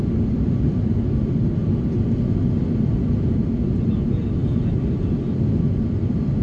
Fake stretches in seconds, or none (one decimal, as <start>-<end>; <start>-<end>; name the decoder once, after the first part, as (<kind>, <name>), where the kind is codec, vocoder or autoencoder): none